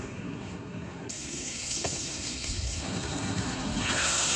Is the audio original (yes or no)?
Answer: no